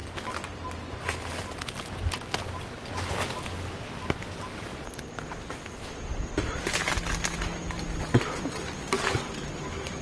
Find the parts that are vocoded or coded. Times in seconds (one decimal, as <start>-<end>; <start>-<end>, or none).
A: none